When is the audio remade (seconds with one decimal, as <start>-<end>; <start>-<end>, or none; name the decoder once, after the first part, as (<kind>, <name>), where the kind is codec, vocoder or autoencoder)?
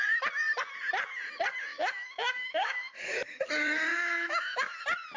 1.7-3.4 (autoencoder, DAC-VAE); 3.9-4.7